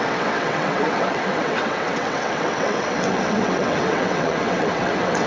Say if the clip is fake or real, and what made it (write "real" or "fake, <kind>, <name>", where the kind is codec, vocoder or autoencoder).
fake, vocoder, WaveNeXt